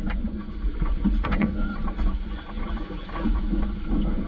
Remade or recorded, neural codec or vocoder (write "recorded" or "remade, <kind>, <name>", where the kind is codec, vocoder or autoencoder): remade, vocoder, Vocos